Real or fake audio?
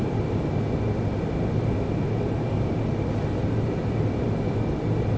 real